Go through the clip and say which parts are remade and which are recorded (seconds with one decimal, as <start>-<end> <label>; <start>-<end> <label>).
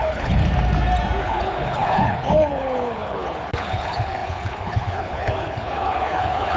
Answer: 0.0-0.4 remade; 0.4-1.2 recorded; 1.2-6.6 remade